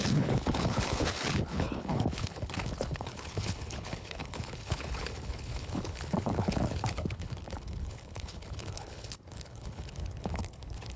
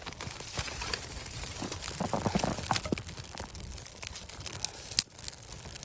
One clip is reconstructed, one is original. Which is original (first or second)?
second